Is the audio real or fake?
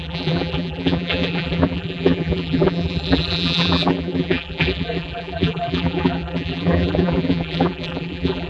fake